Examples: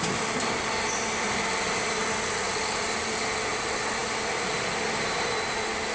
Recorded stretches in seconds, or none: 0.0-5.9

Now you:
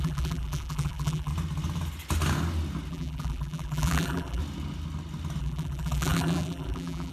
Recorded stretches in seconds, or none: 1.3-2.9; 4.4-5.4

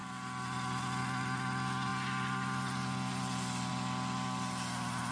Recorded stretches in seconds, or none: 0.0-5.1

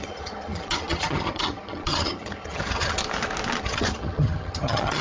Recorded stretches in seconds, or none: 3.0-3.6

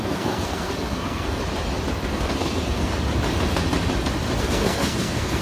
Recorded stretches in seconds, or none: 1.4-2.1; 2.9-4.4